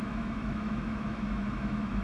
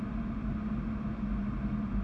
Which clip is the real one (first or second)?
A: second